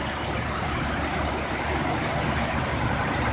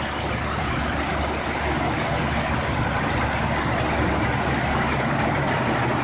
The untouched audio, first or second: second